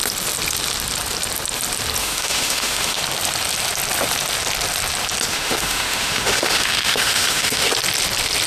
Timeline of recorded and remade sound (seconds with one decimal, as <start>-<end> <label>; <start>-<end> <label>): 0.0-2.0 recorded; 2.0-3.0 remade; 3.0-5.3 recorded; 5.3-7.7 remade; 7.7-8.5 recorded